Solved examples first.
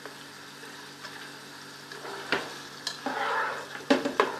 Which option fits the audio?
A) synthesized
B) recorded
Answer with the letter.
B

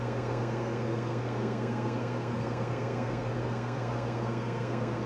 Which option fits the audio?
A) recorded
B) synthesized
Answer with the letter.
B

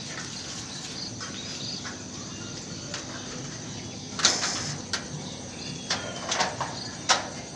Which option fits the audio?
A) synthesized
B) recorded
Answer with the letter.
B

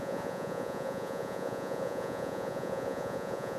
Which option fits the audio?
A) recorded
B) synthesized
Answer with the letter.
B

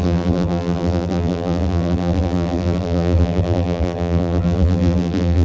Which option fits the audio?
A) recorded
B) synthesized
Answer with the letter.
B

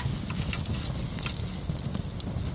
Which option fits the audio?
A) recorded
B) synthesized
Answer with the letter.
A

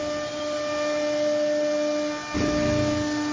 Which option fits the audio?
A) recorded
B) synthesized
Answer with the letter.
A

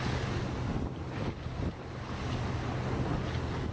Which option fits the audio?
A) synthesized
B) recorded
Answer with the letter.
B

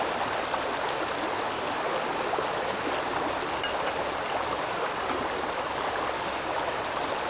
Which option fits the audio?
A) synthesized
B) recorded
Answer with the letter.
B